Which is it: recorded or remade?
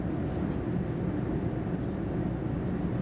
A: recorded